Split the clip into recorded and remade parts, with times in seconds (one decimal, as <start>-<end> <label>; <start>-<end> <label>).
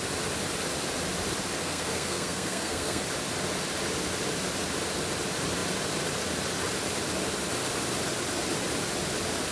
0.0-1.6 recorded; 1.6-3.0 remade; 3.0-9.5 recorded